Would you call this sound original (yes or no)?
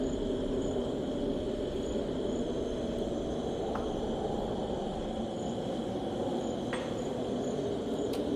yes